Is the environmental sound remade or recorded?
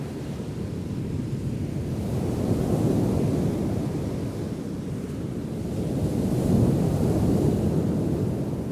recorded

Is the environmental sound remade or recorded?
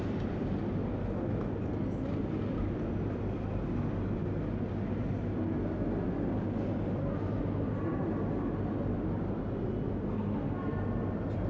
recorded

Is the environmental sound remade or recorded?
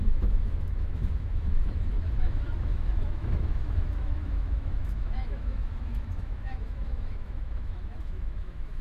remade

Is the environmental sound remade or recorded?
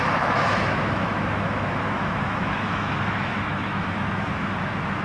remade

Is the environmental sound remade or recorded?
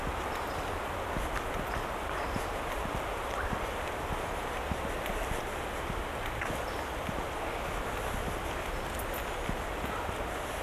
recorded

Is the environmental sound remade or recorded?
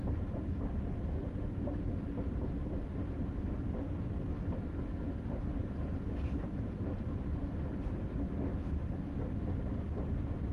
recorded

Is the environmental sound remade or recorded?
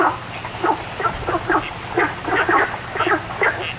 recorded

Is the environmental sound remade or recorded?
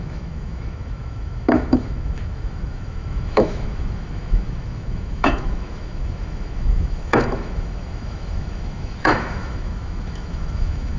remade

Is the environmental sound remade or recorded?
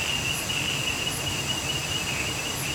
recorded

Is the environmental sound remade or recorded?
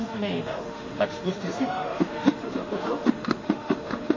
remade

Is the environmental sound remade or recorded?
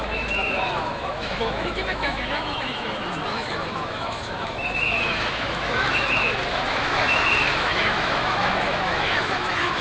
remade